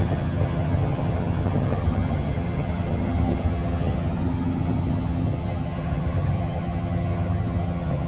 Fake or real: fake